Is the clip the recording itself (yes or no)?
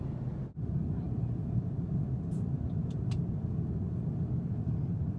yes